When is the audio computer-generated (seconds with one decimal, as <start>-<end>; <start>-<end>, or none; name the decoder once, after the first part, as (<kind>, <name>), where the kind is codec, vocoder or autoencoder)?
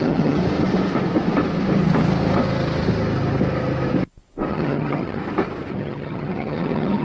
0.0-0.4 (vocoder, HiFi-GAN); 4.5-5.2; 5.7-7.0